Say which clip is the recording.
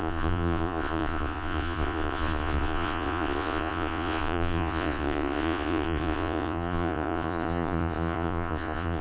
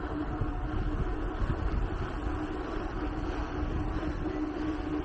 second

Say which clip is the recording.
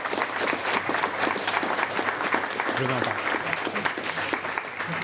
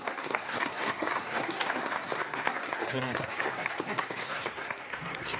first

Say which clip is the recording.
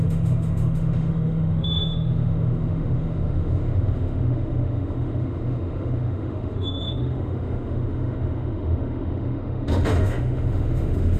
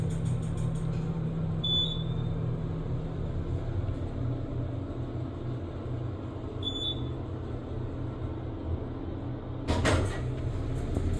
second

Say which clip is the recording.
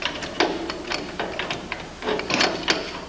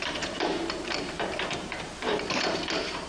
first